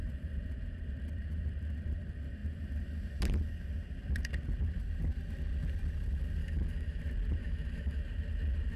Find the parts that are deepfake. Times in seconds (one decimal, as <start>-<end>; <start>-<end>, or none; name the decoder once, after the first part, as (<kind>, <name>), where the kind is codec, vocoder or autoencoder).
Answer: 6.4-7.0 (autoencoder, DAC-VAE); 7.4-8.0